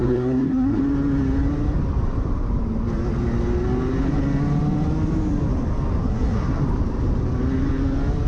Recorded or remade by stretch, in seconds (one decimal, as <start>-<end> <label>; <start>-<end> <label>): 0.0-0.8 remade; 0.8-6.0 recorded; 6.0-6.6 remade; 6.6-8.3 recorded